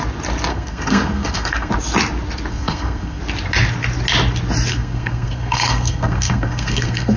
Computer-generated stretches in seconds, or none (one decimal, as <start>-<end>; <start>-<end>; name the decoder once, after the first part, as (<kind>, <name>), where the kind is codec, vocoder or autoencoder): 0.5-1.7 (codec, SNAC); 2.5-3.2; 4.7-7.2